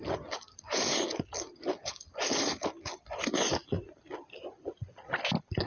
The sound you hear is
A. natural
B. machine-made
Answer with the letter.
A